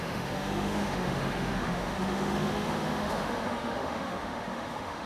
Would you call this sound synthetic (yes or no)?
yes